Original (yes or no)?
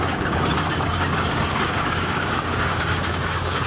no